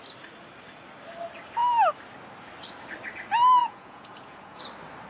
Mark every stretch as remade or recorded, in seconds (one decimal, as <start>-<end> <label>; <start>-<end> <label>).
0.0-3.6 recorded; 3.6-4.6 remade; 4.6-5.1 recorded